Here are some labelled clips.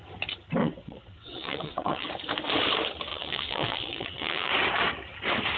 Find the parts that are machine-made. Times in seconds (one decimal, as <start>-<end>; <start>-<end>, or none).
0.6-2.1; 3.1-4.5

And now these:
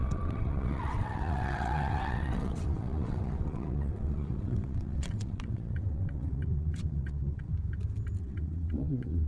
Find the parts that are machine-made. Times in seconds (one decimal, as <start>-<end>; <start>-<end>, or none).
0.0-7.5; 8.2-9.3

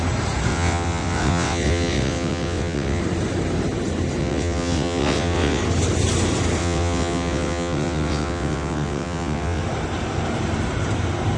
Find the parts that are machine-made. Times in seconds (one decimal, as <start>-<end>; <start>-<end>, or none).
0.5-3.0; 4.2-5.6; 6.6-9.6

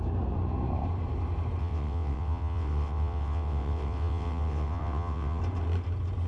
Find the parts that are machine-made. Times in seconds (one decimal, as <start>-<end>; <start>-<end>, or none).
1.6-5.4

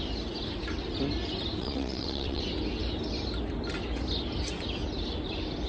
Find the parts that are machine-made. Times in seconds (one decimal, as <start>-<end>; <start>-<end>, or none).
1.6-2.4